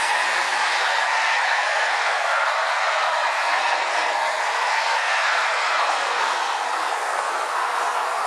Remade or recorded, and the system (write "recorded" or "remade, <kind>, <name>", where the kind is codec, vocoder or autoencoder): remade, codec, SNAC